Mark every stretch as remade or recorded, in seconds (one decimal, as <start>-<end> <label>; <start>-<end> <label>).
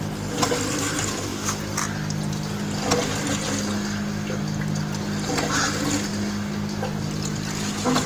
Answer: 0.0-8.1 recorded